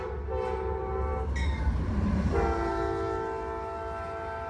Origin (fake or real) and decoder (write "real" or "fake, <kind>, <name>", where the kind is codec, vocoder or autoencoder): real